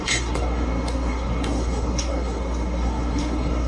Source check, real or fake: fake